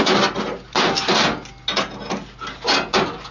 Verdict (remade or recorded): recorded